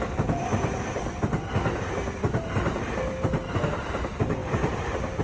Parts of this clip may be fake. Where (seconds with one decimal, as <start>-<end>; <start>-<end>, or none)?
0.0-0.5; 3.6-5.2